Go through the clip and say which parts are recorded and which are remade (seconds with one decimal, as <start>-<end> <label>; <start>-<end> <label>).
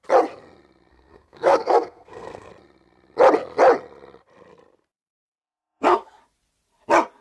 0.0-0.9 recorded; 0.9-2.5 remade; 2.5-5.1 recorded; 5.1-6.2 remade; 6.2-7.2 recorded